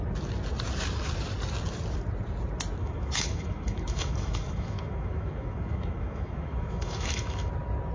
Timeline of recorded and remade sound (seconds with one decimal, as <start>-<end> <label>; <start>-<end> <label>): 0.0-2.8 recorded; 2.8-7.5 remade; 7.5-7.9 recorded